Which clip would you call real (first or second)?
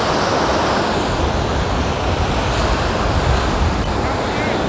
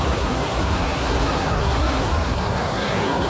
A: first